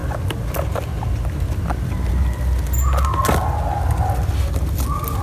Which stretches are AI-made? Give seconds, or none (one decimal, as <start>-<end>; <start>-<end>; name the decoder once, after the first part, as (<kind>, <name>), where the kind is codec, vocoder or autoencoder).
none